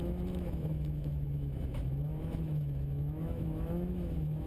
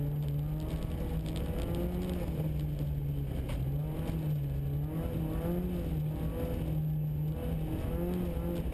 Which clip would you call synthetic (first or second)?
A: first